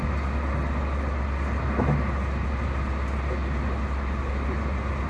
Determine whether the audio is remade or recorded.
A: recorded